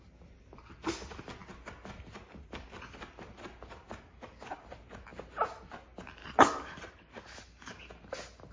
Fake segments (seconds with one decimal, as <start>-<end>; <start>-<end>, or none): 6.2-7.4